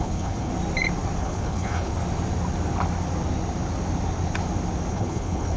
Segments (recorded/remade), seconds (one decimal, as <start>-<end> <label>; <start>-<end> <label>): 0.0-0.5 remade; 0.5-1.2 recorded; 1.2-1.9 remade; 1.9-4.9 recorded; 4.9-5.6 remade

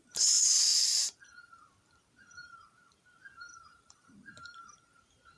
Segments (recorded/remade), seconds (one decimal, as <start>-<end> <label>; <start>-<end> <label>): 0.0-0.7 remade; 0.7-1.4 recorded; 1.4-5.4 remade

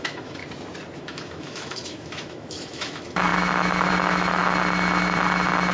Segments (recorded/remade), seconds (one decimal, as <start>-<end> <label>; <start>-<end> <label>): 0.0-0.4 remade; 0.4-1.0 recorded; 1.0-4.4 remade; 4.4-5.7 recorded

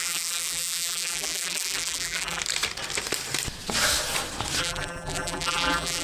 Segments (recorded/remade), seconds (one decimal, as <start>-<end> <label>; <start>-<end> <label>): 0.0-2.4 remade; 2.4-4.6 recorded; 4.6-6.0 remade